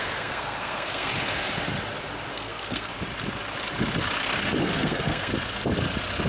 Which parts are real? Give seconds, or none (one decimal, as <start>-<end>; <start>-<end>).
1.1-2.3; 2.9-4.6; 5.3-6.3